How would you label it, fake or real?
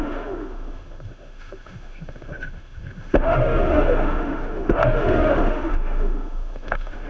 fake